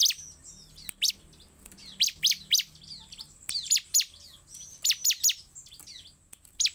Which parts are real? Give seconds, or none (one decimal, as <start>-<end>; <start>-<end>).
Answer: 0.0-6.7